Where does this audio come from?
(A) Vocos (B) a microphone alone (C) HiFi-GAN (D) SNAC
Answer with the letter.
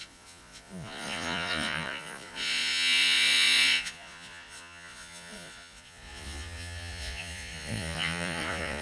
A